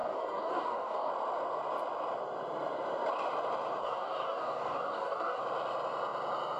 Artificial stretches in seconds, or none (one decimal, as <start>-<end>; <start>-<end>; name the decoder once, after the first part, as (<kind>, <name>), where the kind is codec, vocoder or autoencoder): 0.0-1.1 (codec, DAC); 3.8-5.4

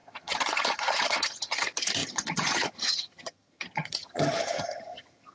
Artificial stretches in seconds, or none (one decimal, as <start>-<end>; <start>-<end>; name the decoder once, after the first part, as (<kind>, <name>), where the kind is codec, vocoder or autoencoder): 0.0-5.3 (vocoder, HiFi-GAN)

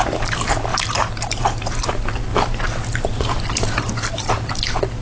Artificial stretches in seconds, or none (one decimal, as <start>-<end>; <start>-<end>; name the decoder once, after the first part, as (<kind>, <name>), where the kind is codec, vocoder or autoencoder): 0.7-1.9 (vocoder, BigVGAN v2); 2.3-4.5

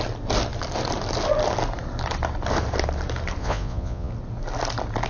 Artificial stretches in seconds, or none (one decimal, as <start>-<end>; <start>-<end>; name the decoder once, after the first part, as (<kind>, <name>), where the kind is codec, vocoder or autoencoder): 3.4-4.1 (vocoder, Vocos)

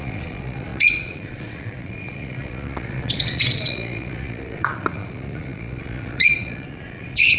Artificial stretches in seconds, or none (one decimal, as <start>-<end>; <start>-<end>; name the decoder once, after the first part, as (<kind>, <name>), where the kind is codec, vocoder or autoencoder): 0.0-7.4 (vocoder, Vocos)

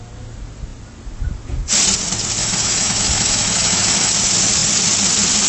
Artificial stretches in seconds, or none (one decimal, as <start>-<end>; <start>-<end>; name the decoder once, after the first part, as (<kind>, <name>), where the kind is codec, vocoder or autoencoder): 2.4-4.1 (autoencoder, DAC-VAE)

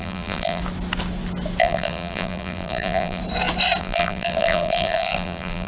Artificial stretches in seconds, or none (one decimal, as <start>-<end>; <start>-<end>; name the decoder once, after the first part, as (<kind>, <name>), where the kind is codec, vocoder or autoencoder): 0.0-0.6 (vocoder, BigVGAN v2); 1.6-3.2; 3.8-5.7